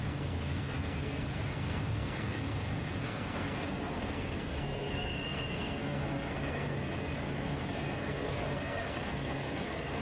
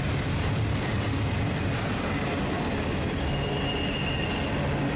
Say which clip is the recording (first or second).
second